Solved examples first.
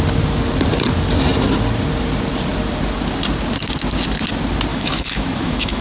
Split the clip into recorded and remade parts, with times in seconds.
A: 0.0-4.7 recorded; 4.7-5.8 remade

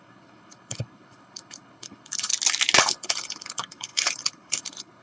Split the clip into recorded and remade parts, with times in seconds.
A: 0.0-2.3 remade; 2.3-2.8 recorded; 2.8-5.0 remade

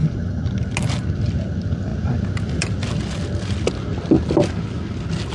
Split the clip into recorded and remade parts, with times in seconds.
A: 0.0-0.5 remade; 0.5-5.3 recorded